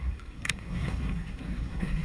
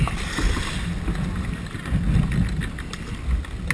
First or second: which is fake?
first